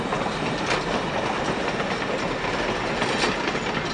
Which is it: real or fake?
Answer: real